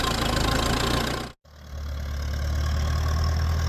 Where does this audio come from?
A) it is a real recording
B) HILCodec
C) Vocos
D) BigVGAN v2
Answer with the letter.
A